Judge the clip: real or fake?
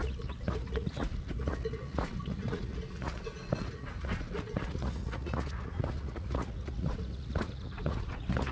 fake